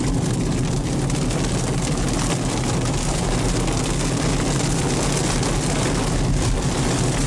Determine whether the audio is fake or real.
real